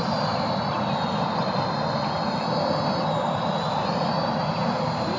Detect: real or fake real